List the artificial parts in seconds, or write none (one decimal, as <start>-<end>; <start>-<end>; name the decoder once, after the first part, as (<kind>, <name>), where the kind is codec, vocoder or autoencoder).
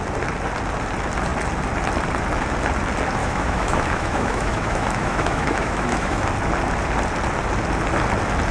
3.2-6.3 (autoencoder, DAC-VAE)